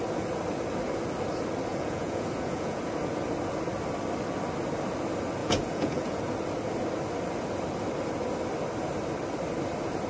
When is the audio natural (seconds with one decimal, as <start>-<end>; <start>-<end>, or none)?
0.0-1.7; 2.8-5.4; 6.2-10.1